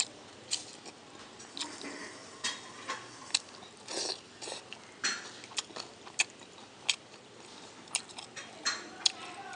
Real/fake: real